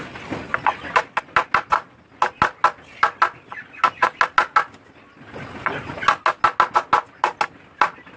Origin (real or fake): real